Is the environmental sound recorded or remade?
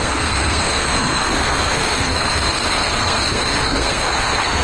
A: remade